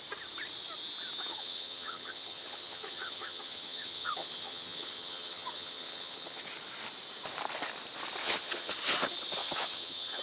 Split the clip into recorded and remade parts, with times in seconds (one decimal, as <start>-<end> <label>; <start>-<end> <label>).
0.0-1.3 recorded; 1.3-6.4 remade; 6.4-8.2 recorded; 8.2-8.7 remade; 8.7-9.4 recorded; 9.4-10.2 remade